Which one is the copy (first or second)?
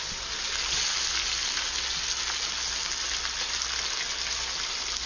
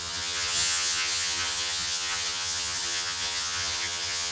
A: second